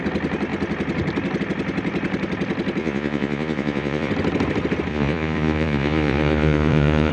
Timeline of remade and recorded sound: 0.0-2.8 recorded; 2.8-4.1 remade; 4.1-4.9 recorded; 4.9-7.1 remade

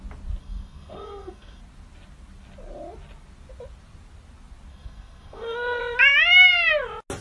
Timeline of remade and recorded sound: 0.0-0.4 recorded; 0.4-1.6 remade; 1.6-4.7 recorded; 4.7-5.8 remade; 5.8-7.2 recorded

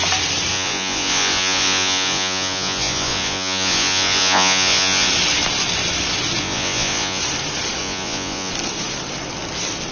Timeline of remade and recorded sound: 0.0-0.5 recorded; 0.5-5.1 remade; 5.1-6.4 recorded; 6.4-7.2 remade; 7.2-7.8 recorded; 7.8-8.5 remade; 8.5-9.9 recorded